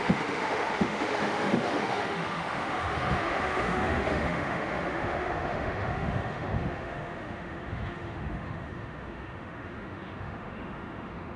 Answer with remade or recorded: remade